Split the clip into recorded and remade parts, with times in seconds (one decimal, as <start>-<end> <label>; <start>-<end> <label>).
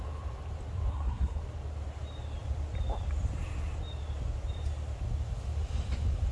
0.0-0.9 recorded; 0.9-1.4 remade; 1.4-6.3 recorded